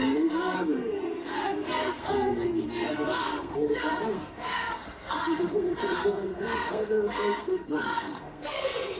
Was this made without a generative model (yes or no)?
no